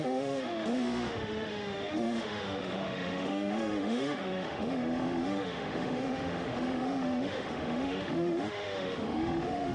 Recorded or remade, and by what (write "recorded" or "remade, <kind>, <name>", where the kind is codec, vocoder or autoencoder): remade, autoencoder, DAC-VAE